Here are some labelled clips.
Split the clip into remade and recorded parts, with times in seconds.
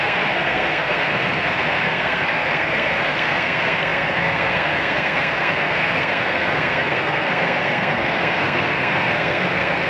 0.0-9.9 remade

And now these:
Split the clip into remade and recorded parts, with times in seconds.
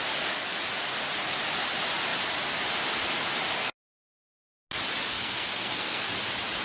0.0-5.1 recorded; 5.1-6.1 remade; 6.1-6.6 recorded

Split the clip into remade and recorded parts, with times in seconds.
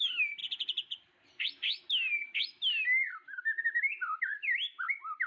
0.0-5.3 recorded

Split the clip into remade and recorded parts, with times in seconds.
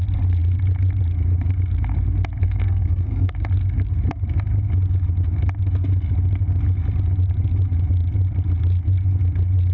0.0-2.4 recorded; 2.4-3.3 remade; 3.3-9.7 recorded